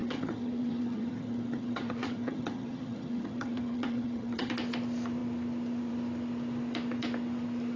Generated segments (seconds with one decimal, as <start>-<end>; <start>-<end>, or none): 0.0-4.5